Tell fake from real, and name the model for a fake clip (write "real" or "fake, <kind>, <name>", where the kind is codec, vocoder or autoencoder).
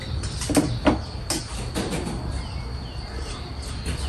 real